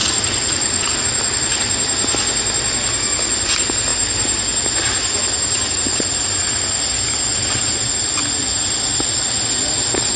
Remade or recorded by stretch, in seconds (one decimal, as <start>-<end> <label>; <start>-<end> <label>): 0.0-1.0 remade; 1.0-10.2 recorded